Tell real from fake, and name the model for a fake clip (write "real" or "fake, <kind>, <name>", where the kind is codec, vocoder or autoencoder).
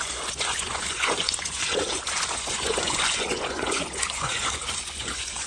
fake, vocoder, Vocos